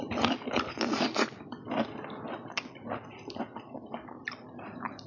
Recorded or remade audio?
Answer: recorded